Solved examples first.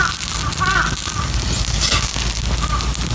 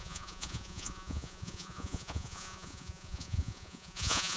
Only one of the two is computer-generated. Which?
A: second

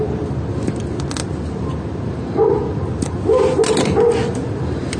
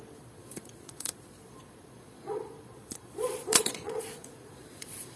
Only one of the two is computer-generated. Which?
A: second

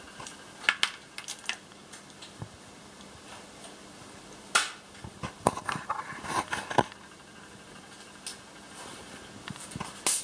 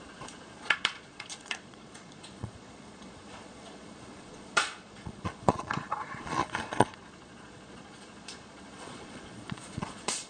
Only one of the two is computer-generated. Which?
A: second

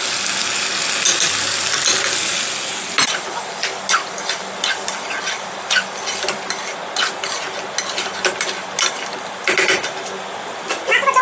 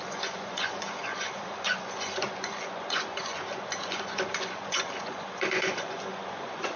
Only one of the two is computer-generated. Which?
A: second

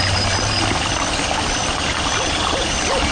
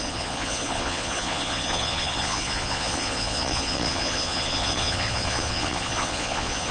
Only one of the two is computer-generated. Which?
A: second